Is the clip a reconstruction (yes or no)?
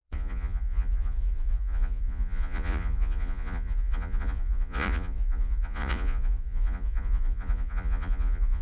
yes